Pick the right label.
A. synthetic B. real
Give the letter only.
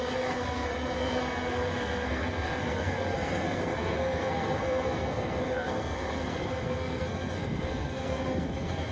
A